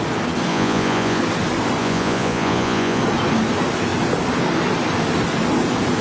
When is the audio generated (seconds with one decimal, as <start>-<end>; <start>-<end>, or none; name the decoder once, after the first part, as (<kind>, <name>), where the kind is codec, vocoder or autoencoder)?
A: 0.5-1.2 (vocoder, Vocos); 1.8-3.0

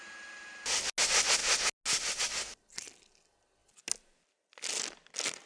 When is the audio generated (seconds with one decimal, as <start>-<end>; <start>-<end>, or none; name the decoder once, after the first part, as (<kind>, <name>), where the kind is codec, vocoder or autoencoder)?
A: none

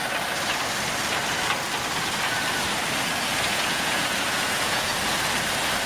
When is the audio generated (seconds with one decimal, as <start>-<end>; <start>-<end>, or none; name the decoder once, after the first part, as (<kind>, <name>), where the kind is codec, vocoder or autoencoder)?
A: 3.5-4.9 (vocoder, Vocos)

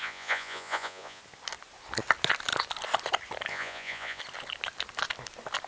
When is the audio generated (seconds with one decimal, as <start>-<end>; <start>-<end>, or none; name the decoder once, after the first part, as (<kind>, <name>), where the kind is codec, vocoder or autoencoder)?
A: 0.0-1.2 (vocoder, Vocos); 3.5-4.2

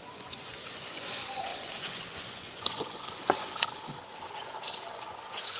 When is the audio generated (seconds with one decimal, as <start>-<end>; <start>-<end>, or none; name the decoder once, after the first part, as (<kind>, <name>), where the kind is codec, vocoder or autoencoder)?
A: 0.0-5.6 (vocoder, Vocos)

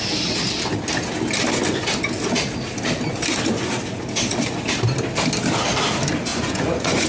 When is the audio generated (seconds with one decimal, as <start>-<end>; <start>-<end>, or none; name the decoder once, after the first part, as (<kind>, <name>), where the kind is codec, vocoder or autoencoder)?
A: 6.3-7.1 (vocoder, Vocos)